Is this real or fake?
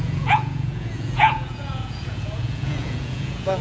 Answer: fake